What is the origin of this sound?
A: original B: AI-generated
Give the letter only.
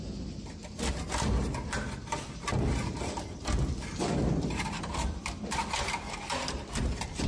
A